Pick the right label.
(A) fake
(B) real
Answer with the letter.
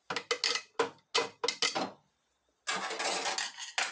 B